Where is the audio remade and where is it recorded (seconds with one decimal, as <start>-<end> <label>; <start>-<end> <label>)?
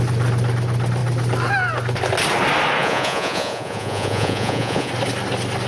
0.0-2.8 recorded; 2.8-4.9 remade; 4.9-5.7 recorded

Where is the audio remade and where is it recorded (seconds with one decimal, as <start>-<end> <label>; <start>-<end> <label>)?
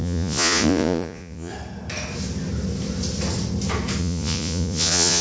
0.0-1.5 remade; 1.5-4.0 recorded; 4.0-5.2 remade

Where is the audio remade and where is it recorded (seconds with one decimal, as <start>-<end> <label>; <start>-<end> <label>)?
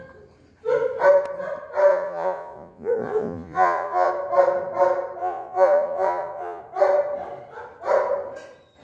0.0-1.9 recorded; 1.9-4.1 remade; 4.1-5.2 recorded; 5.2-6.6 remade; 6.6-8.8 recorded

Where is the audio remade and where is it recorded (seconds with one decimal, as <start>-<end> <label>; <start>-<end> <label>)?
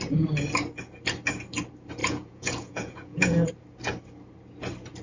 0.0-2.0 recorded; 2.0-3.5 remade; 3.5-5.0 recorded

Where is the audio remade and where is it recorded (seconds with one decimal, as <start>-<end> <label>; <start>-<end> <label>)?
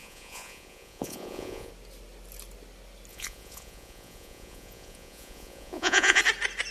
0.0-1.7 remade; 1.7-3.1 recorded; 3.1-6.2 remade; 6.2-6.7 recorded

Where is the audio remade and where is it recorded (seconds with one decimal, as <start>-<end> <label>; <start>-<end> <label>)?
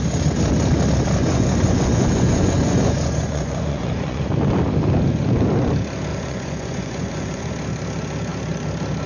0.0-1.2 recorded; 1.2-4.2 remade; 4.2-6.1 recorded; 6.1-7.5 remade; 7.5-9.1 recorded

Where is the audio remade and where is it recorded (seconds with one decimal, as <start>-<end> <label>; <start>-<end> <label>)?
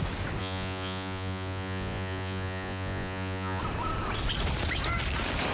0.0-0.4 recorded; 0.4-3.6 remade; 3.6-5.5 recorded